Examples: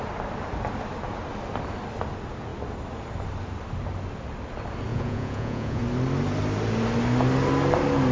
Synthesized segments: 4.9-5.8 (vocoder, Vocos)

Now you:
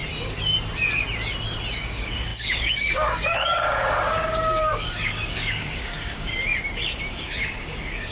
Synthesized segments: 1.7-6.3 (codec, DAC); 7.1-8.1

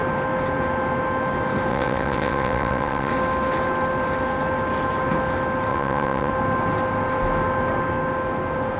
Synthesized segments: 1.7-3.1 (vocoder, WaveNeXt); 5.7-6.3

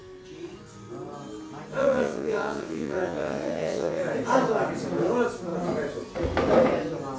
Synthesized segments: 1.8-4.0 (vocoder, WaveNeXt)

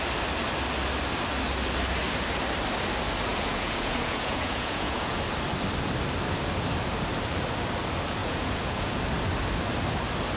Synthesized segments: 3.3-5.1 (vocoder, Vocos); 8.2-8.9

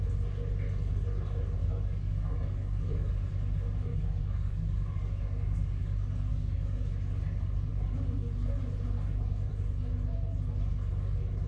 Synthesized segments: 1.6-3.1 (codec, DAC); 3.9-5.8; 6.3-6.9